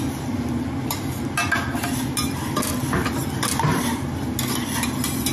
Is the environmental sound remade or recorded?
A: recorded